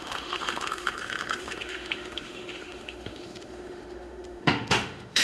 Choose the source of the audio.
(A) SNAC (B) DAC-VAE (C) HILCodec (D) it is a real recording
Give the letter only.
B